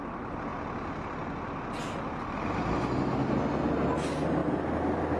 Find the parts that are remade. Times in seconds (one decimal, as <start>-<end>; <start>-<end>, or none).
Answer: none